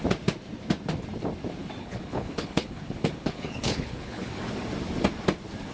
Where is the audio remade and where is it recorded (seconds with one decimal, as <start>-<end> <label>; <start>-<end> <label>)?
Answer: 0.0-1.8 recorded; 1.8-4.3 remade; 4.3-5.7 recorded